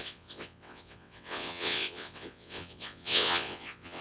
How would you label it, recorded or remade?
remade